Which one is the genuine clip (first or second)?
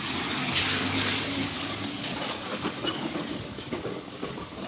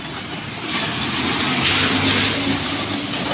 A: second